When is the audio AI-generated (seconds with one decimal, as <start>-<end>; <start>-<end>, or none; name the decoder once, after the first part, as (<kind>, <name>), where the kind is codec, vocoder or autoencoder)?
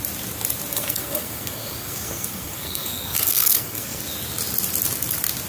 0.7-4.0 (codec, SNAC)